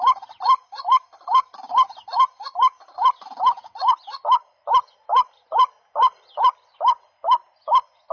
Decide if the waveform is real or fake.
real